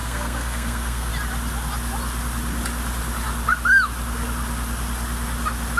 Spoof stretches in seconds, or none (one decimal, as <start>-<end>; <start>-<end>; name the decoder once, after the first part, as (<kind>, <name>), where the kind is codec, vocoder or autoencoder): 0.0-1.1 (codec, SNAC)